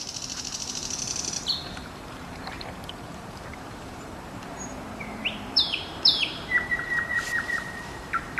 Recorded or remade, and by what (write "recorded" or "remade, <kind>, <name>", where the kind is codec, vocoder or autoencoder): remade, vocoder, BigVGAN v2